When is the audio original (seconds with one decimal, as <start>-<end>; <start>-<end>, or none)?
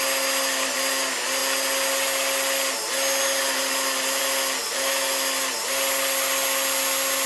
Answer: 0.0-7.3